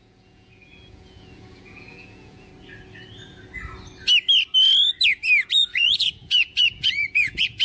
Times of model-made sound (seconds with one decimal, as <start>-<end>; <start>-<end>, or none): 0.0-2.5; 5.5-7.6